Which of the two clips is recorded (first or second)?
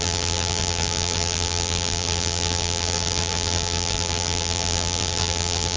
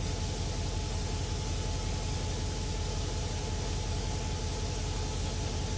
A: second